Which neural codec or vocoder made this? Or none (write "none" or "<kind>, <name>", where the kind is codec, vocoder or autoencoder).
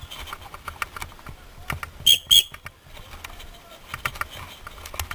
none